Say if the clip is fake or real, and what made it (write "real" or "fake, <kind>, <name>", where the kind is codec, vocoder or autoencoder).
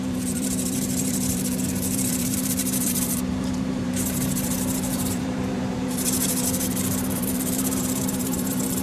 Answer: fake, vocoder, BigVGAN v2